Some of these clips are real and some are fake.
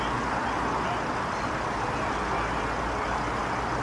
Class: real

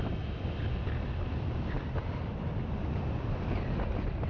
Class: fake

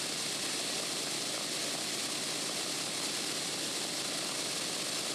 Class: real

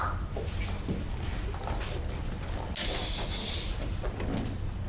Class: real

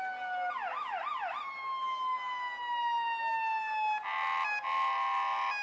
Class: real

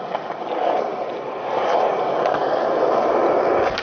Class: real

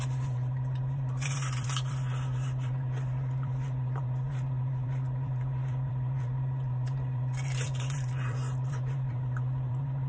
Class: fake